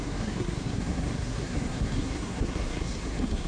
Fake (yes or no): yes